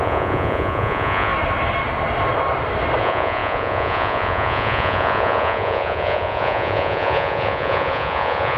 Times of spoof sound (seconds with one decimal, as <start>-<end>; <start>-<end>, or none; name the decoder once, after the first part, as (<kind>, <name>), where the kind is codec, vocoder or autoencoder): 0.0-1.3 (vocoder, Vocos); 3.0-8.6